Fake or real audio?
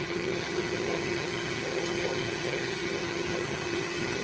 fake